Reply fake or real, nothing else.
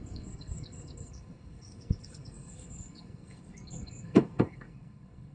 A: fake